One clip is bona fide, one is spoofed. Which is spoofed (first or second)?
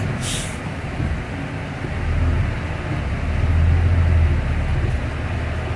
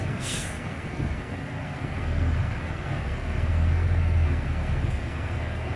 second